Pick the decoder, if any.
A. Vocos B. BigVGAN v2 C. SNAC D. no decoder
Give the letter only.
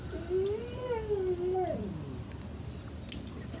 D